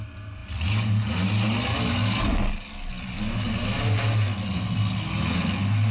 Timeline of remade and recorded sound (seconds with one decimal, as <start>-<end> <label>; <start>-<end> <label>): 0.0-5.9 recorded